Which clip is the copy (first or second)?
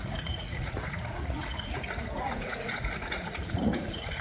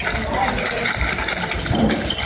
first